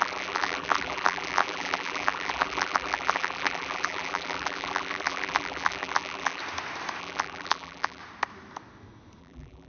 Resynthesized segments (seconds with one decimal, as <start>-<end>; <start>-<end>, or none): 0.0-6.4; 7.0-8.0; 9.2-9.7